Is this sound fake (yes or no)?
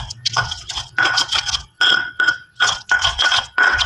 yes